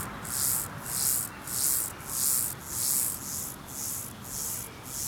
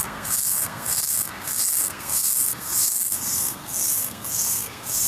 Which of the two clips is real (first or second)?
first